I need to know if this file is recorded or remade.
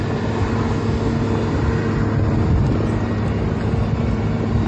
recorded